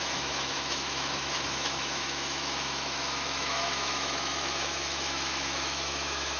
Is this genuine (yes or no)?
no